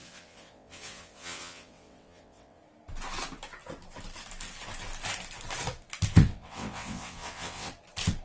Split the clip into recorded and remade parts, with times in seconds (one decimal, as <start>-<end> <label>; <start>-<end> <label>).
0.0-2.6 remade; 2.6-6.2 recorded; 6.2-7.7 remade; 7.7-8.2 recorded